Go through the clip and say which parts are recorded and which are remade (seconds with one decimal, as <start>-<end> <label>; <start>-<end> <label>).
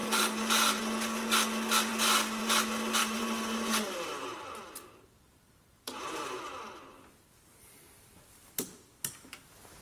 0.0-0.8 remade; 0.8-3.0 recorded; 3.0-6.4 remade; 6.4-9.8 recorded